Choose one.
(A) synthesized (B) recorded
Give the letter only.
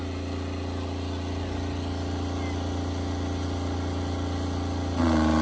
B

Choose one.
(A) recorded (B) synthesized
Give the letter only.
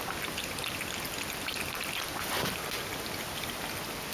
A